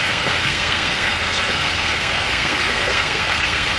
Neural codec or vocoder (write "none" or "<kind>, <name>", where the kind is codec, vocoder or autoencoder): codec, SNAC